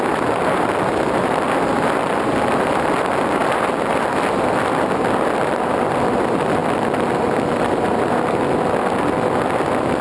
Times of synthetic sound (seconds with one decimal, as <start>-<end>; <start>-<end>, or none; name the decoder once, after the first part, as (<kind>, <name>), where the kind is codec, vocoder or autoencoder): 0.0-6.6 (vocoder, BigVGAN v2); 7.6-10.0